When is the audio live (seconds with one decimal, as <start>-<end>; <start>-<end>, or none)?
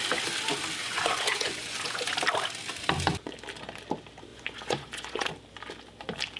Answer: 0.0-0.8; 2.1-4.3; 5.3-6.4